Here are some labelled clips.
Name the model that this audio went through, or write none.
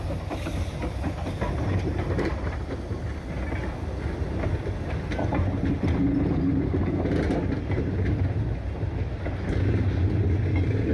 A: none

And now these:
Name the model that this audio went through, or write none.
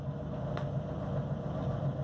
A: none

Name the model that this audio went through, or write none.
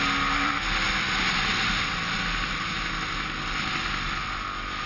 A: none